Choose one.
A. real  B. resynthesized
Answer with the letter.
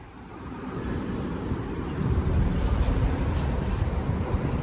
B